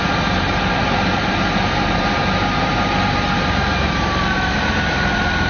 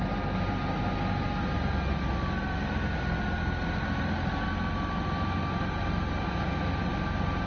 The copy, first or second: first